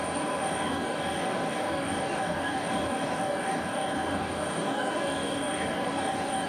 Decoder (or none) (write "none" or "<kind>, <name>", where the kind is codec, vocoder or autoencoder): codec, DAC